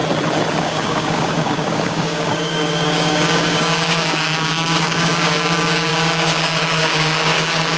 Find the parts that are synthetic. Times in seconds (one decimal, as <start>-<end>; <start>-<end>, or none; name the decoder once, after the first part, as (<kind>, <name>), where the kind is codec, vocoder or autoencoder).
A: 0.6-7.8 (codec, DAC)